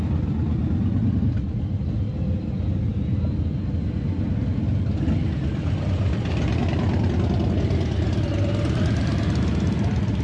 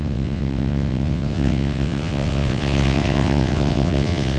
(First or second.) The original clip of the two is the first